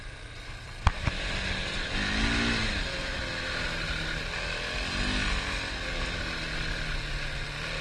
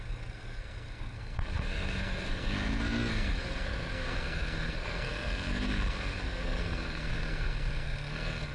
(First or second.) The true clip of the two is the first